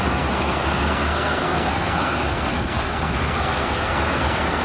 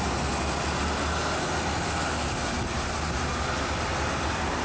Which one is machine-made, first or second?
first